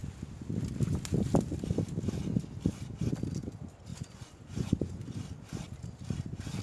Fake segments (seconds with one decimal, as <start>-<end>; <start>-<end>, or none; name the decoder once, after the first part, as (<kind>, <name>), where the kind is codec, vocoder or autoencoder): 3.9-5.2 (vocoder, Vocos)